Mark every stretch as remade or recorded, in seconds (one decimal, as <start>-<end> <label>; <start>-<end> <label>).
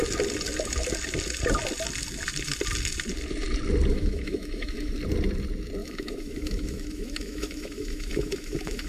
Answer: 0.0-3.9 recorded; 3.9-4.9 remade; 4.9-5.8 recorded; 5.8-8.9 remade